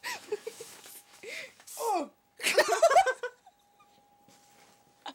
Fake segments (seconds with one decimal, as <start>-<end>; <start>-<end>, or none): 0.0-1.7